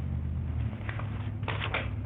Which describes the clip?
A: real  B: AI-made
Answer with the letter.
A